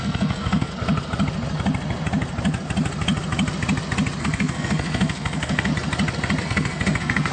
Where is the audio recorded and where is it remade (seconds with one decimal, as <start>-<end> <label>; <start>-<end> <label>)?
0.0-0.7 remade; 0.7-4.2 recorded; 4.2-5.7 remade; 5.7-6.4 recorded; 6.4-7.3 remade